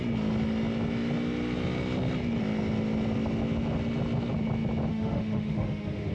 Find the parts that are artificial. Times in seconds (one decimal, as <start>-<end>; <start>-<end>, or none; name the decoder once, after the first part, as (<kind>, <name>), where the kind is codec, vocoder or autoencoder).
4.9-6.1 (autoencoder, DAC-VAE)